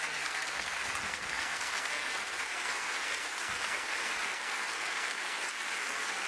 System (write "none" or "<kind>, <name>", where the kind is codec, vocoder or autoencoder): codec, SNAC